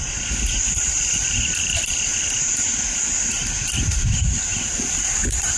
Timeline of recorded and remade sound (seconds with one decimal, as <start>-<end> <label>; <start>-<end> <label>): 0.0-5.6 recorded